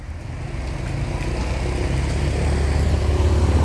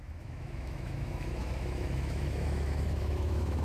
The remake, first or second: second